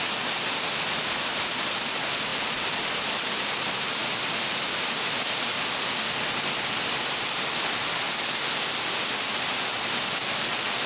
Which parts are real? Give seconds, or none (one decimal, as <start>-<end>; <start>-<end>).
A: 0.0-10.9